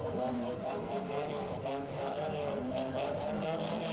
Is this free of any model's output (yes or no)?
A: no